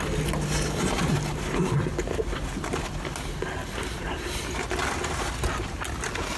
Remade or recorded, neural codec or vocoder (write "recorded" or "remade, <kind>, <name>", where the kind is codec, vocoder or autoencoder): recorded